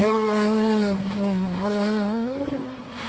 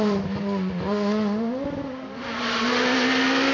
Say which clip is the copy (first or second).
first